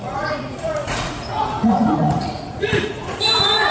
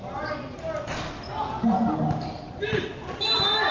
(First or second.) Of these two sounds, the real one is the second